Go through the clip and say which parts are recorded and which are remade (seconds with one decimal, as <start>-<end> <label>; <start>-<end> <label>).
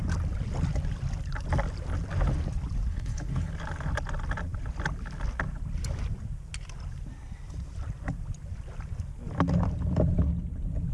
0.0-2.9 recorded; 2.9-3.5 remade; 3.5-10.9 recorded